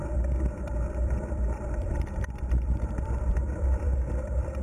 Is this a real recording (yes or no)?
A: no